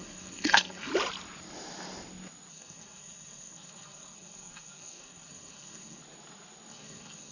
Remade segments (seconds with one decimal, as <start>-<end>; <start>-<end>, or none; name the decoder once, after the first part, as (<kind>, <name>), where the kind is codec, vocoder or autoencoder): 0.0-0.9 (codec, SNAC); 2.5-6.0; 6.7-7.3